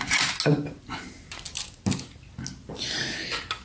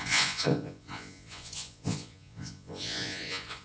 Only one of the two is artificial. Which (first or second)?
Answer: second